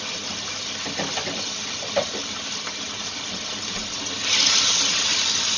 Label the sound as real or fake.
real